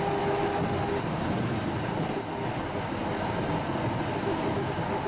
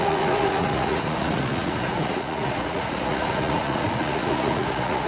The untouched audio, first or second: first